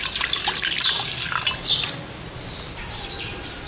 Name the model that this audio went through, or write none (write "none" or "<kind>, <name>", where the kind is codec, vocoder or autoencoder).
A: none